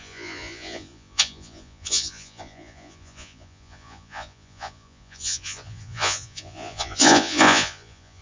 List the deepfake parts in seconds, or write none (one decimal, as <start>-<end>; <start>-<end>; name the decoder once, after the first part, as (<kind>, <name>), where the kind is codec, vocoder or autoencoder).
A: 0.0-8.2 (vocoder, Vocos)